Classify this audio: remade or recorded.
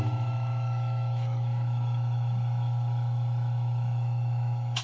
remade